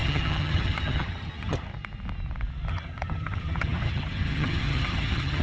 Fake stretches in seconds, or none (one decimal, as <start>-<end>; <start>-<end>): 0.0-1.7; 2.7-5.4